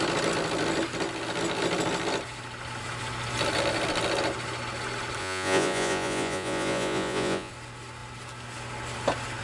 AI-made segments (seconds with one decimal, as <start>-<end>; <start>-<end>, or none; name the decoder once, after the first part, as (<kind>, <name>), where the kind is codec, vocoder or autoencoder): 5.2-7.5 (vocoder, Vocos)